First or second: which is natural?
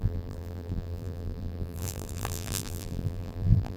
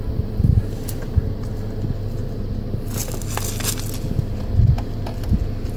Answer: second